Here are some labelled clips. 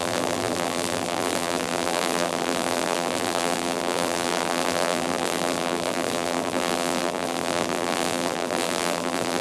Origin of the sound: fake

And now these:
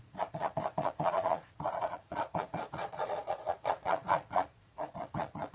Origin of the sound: fake